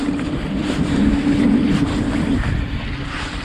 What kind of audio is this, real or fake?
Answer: real